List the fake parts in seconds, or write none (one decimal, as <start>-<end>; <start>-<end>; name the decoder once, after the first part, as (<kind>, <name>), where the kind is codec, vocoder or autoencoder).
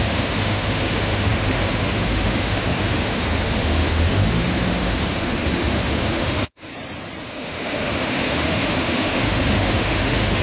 0.0-6.7 (autoencoder, DAC-VAE); 7.2-10.4